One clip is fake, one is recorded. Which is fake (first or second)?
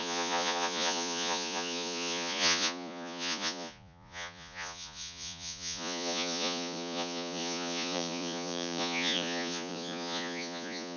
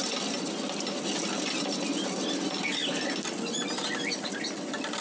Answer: first